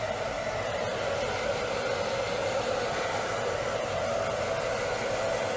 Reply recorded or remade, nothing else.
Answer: recorded